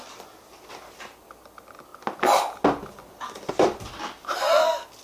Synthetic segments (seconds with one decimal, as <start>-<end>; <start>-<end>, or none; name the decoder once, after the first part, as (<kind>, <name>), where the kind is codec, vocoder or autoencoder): none